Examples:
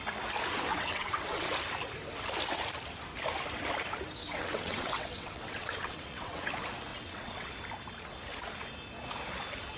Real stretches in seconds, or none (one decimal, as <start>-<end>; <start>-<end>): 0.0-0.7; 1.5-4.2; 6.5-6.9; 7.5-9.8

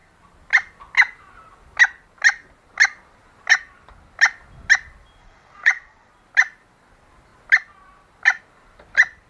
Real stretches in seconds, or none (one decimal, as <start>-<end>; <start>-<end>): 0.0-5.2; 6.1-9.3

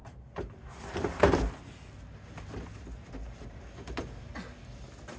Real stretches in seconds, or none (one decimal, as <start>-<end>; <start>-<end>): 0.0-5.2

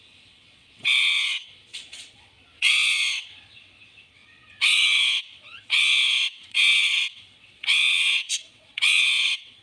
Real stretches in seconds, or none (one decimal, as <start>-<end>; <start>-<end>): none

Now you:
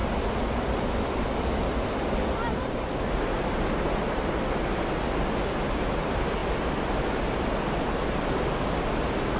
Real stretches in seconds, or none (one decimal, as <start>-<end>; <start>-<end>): 0.0-9.4

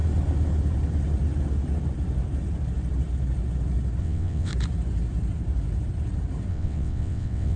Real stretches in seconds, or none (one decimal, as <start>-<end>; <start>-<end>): 0.0-4.0; 4.5-6.5

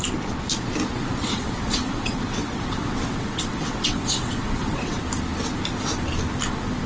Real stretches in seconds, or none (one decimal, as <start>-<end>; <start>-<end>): 0.0-0.9; 5.0-6.9